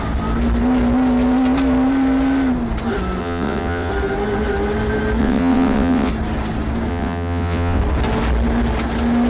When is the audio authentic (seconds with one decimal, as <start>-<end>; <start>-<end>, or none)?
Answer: 0.0-3.2; 3.9-5.2; 6.1-6.9; 7.8-9.3